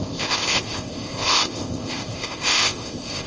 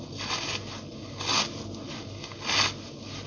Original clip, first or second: second